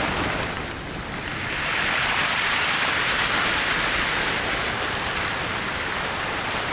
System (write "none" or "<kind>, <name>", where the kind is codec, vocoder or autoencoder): none